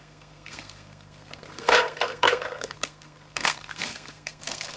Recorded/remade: remade